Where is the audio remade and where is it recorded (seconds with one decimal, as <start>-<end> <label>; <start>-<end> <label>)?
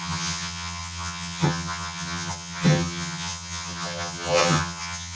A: 0.0-5.2 remade